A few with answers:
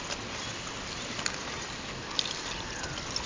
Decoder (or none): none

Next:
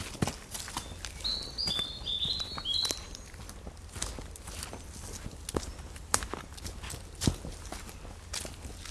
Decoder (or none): none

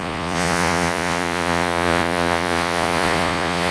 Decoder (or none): vocoder, Vocos